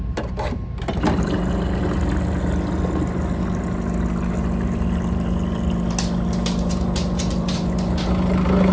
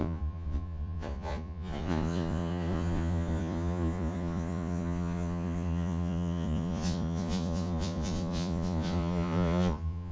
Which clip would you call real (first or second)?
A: first